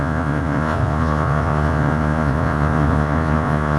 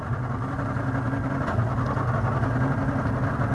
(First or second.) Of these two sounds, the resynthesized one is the first